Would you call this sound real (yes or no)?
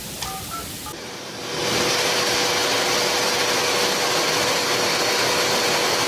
yes